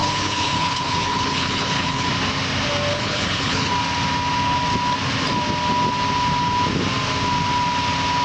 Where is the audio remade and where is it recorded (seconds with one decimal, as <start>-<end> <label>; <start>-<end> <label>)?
0.0-2.1 remade; 2.1-2.9 recorded; 2.9-3.7 remade; 3.7-8.2 recorded